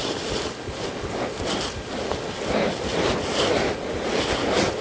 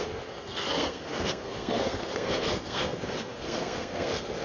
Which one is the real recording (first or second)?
first